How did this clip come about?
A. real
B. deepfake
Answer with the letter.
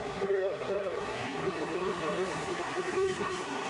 B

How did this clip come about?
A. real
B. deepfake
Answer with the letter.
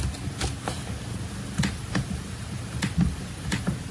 A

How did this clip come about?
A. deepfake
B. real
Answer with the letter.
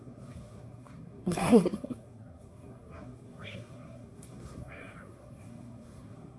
A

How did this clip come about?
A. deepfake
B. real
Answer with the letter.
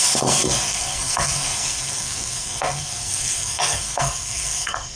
A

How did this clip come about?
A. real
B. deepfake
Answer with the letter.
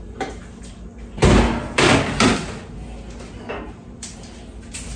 A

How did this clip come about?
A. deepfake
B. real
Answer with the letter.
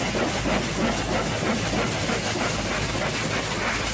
B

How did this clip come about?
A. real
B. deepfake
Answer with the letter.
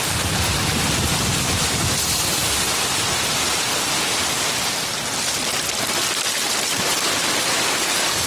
A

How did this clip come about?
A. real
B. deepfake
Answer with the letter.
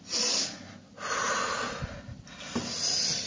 A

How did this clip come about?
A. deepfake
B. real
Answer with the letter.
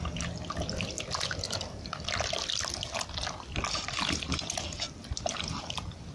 B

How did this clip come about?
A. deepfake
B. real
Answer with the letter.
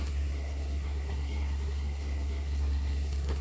A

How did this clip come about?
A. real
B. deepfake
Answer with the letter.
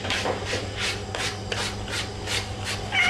A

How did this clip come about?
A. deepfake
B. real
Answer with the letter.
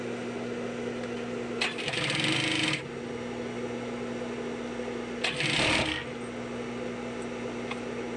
B